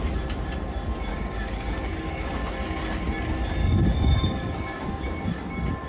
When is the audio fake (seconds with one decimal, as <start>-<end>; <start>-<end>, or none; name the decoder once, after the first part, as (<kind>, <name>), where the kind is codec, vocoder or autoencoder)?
1.1-2.5 (codec, DAC); 3.6-5.1

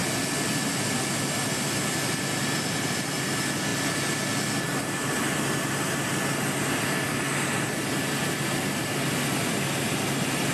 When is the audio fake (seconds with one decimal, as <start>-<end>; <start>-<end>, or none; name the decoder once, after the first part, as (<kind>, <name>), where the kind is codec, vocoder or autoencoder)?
none

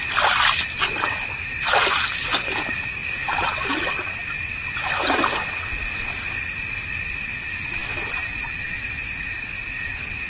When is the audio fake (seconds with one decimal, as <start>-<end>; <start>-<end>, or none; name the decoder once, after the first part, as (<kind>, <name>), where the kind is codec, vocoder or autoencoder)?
3.0-3.7 (vocoder, BigVGAN v2); 7.8-9.2

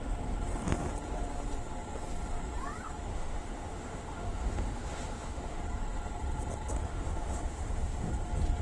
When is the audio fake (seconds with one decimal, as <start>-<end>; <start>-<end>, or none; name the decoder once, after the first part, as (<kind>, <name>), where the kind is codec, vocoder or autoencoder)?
3.1-5.6 (autoencoder, DAC-VAE); 6.7-8.1

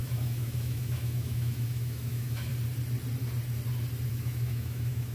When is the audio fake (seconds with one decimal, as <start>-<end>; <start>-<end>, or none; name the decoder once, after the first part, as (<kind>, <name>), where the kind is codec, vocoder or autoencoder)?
0.0-2.5 (autoencoder, DAC-VAE); 4.1-5.1